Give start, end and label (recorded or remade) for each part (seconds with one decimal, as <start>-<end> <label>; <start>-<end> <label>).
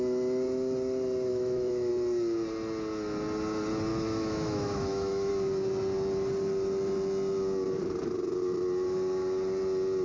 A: 0.0-1.3 recorded; 1.3-1.9 remade; 1.9-3.9 recorded; 3.9-5.3 remade; 5.3-10.0 recorded